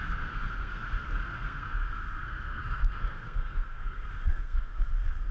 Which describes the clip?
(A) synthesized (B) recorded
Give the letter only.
A